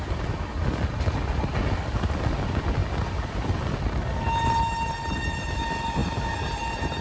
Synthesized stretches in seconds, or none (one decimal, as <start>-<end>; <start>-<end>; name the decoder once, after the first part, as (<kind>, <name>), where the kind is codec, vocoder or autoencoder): none